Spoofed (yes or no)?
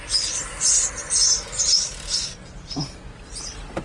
no